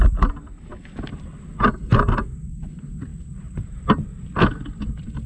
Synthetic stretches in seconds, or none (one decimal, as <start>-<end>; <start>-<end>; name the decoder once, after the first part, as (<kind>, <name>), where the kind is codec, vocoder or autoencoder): none